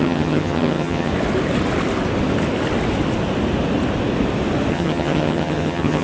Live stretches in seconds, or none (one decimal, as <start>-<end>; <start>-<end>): 1.1-4.7